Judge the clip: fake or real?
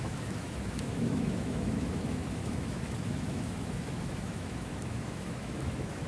fake